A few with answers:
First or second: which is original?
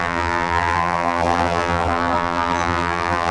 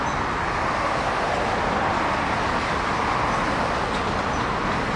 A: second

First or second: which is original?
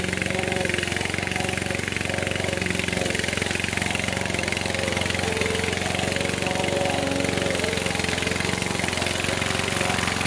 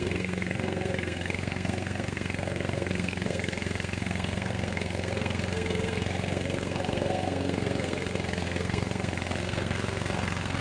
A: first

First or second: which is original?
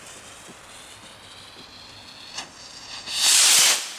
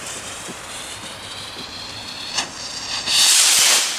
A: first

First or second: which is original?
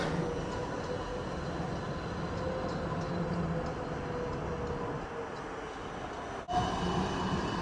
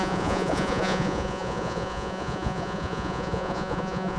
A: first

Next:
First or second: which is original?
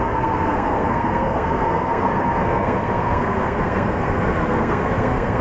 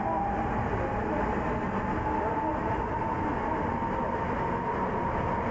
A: second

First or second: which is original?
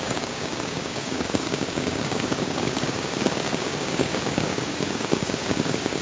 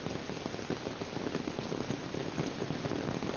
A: second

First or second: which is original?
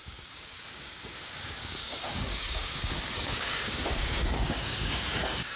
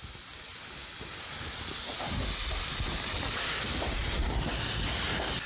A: second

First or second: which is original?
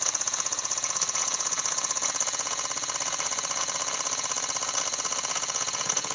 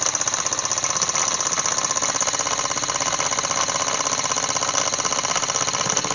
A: second